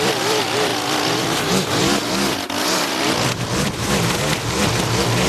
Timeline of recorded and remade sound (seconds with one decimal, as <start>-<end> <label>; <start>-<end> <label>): 0.0-0.7 remade; 0.7-3.9 recorded; 3.9-5.3 remade